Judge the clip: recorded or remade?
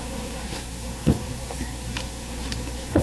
remade